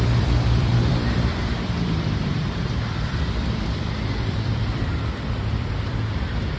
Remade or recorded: remade